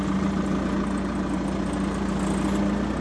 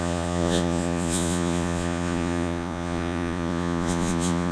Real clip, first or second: first